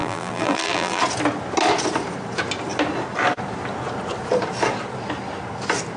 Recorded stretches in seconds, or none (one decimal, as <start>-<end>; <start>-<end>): 1.0-6.0